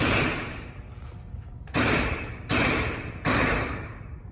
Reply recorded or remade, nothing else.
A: remade